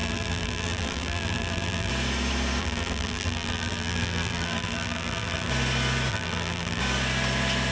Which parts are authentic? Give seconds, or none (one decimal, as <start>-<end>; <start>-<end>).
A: 1.9-2.6; 5.5-6.1; 6.8-7.7